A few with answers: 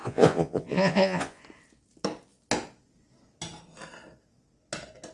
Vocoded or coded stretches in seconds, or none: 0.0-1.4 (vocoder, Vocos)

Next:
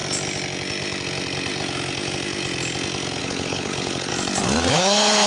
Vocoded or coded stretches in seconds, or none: 3.2-4.1 (codec, HILCodec); 4.7-5.3

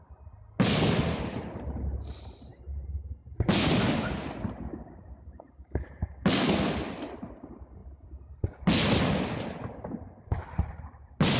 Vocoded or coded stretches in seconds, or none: none

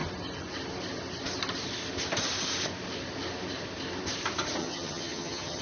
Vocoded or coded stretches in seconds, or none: 4.6-5.6 (vocoder, HiFi-GAN)

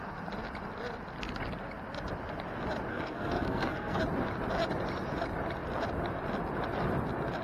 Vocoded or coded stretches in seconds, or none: 2.9-4.0 (codec, SNAC)

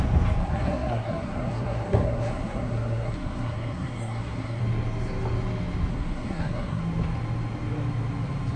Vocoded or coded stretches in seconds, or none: 0.4-4.6 (codec, SNAC); 5.9-6.8

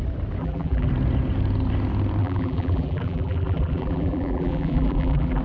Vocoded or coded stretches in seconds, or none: 0.4-0.9 (vocoder, BigVGAN v2); 2.2-5.4